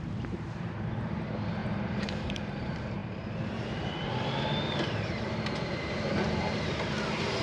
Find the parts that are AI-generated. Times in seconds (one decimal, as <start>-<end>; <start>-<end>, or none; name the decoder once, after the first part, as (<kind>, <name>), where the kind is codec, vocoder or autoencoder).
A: 0.0-7.4 (vocoder, BigVGAN v2)